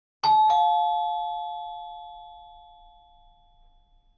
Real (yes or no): yes